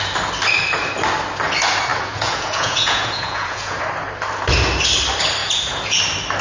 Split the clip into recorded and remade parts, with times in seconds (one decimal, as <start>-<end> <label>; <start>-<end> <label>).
0.0-1.9 recorded; 1.9-3.8 remade; 3.8-5.4 recorded; 5.4-6.0 remade; 6.0-6.4 recorded

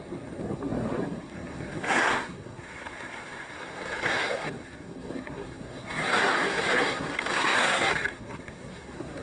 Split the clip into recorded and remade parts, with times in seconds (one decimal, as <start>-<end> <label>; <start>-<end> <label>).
0.0-9.2 remade

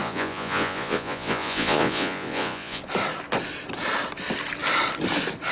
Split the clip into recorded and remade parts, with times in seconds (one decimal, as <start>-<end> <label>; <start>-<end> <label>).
0.0-2.8 remade; 2.8-5.5 recorded

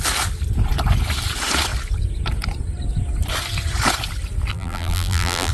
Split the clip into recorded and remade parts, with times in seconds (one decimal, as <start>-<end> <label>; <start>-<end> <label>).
0.0-4.5 recorded; 4.5-5.5 remade

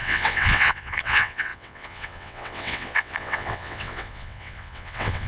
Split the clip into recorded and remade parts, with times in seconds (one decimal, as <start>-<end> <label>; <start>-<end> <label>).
0.0-5.3 remade

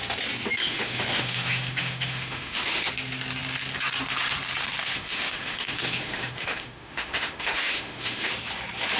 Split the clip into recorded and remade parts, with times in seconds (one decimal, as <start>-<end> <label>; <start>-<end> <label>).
0.0-0.6 recorded; 0.6-2.9 remade; 2.9-4.8 recorded; 4.8-8.3 remade; 8.3-9.0 recorded